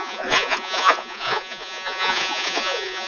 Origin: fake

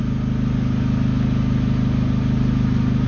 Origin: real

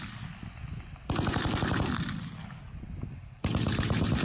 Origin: real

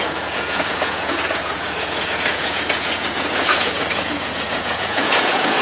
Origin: fake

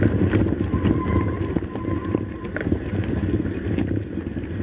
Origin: real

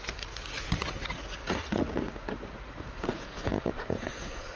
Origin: fake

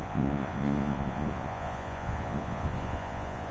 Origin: fake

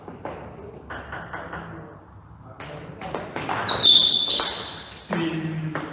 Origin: real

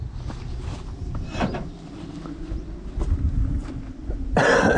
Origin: real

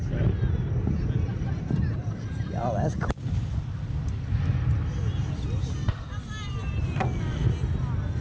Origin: real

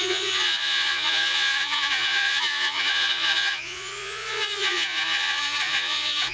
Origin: fake